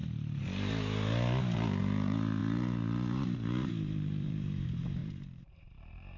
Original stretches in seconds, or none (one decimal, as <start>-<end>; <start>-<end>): 0.0-1.8